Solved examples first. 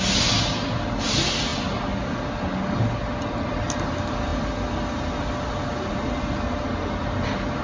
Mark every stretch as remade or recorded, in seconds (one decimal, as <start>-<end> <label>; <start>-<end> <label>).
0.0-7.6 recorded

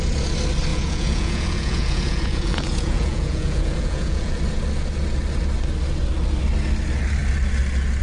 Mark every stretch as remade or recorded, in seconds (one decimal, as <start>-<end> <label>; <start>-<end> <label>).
0.0-0.7 recorded; 0.7-4.4 remade; 4.4-8.0 recorded

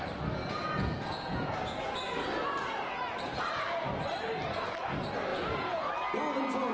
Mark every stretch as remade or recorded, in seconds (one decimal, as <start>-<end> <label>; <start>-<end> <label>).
0.0-0.4 recorded; 0.4-1.9 remade; 1.9-5.3 recorded; 5.3-5.9 remade; 5.9-6.7 recorded

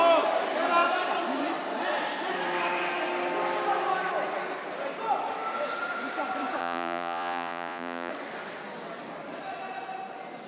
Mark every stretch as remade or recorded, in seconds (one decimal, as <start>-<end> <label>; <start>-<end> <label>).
0.0-6.6 recorded; 6.6-8.1 remade; 8.1-10.5 recorded